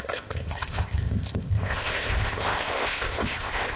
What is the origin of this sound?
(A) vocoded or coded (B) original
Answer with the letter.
A